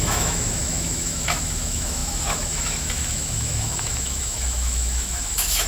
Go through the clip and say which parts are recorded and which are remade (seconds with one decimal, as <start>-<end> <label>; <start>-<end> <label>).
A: 0.0-5.7 remade